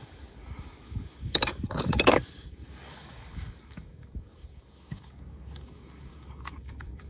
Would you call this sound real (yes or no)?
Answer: no